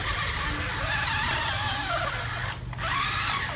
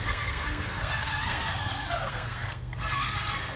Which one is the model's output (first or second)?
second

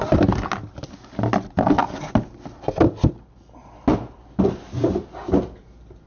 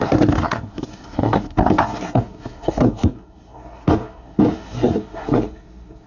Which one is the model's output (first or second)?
second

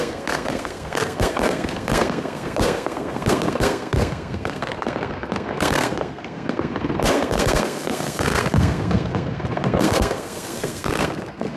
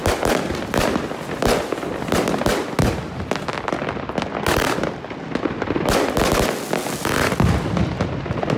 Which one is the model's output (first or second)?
first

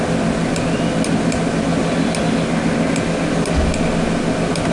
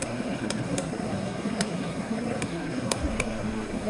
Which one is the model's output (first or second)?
second